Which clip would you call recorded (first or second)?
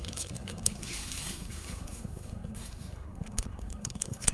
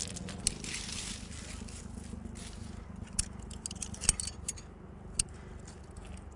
second